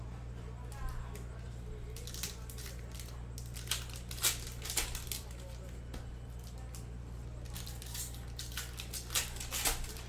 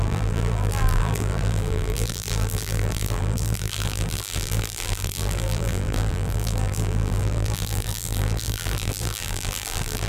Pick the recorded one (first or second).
first